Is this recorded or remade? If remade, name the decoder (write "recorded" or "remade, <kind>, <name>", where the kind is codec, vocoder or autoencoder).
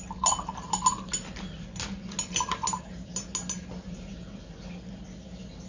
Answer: recorded